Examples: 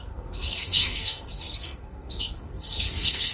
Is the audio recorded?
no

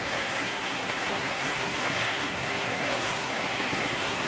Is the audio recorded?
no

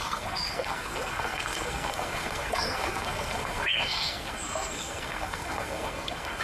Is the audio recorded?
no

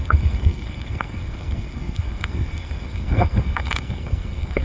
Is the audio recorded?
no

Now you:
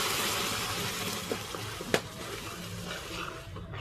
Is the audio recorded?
yes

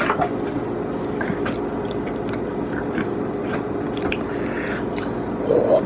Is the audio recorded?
yes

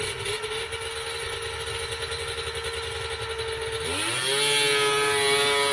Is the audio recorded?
yes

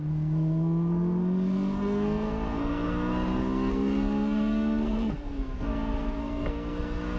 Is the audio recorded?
no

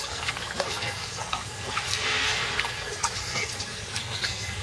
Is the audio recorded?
no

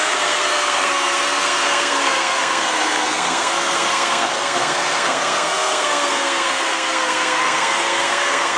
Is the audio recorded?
no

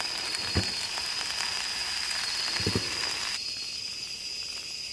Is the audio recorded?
yes